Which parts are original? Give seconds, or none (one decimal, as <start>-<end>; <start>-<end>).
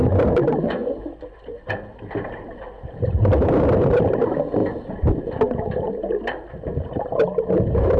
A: 4.6-5.9